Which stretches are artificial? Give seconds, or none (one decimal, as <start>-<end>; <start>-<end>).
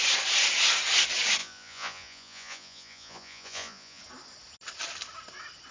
1.4-4.0